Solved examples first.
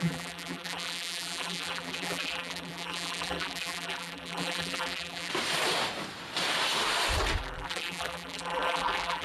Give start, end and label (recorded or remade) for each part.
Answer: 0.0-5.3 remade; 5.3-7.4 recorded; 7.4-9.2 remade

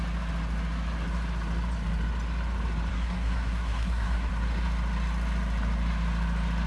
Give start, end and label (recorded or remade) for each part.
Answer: 0.0-2.9 recorded; 2.9-4.3 remade; 4.3-6.7 recorded